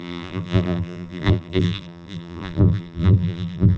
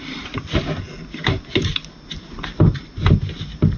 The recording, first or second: second